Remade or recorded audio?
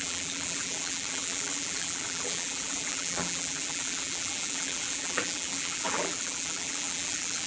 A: remade